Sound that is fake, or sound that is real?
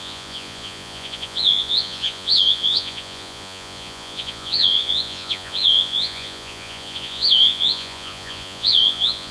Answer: fake